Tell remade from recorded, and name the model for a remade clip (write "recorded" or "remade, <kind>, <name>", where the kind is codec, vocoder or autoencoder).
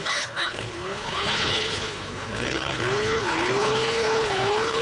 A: remade, codec, HILCodec